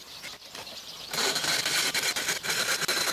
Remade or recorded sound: recorded